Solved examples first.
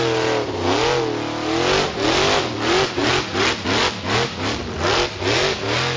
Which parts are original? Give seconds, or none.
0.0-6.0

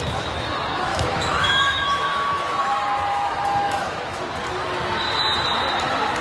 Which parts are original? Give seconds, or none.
0.0-0.9; 2.7-3.1; 4.2-6.2

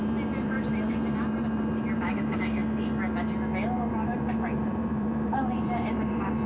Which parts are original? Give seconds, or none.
2.6-3.9

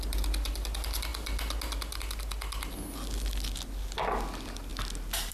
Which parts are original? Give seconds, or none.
0.0-5.3

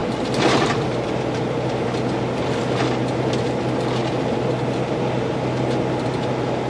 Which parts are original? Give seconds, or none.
0.0-6.7

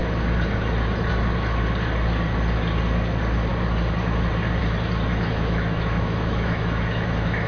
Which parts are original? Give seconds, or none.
0.0-5.1

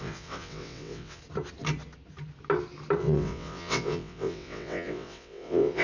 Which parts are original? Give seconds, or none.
1.2-3.0